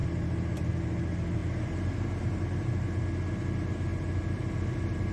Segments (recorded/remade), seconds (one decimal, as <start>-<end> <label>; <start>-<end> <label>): 0.0-0.7 remade; 0.7-1.4 recorded; 1.4-2.3 remade; 2.3-3.9 recorded; 3.9-4.5 remade; 4.5-5.1 recorded